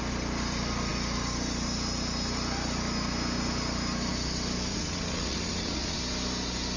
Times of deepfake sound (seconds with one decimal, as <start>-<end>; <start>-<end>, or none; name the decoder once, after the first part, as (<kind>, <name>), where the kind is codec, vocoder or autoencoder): 4.7-6.0 (vocoder, WaveNeXt)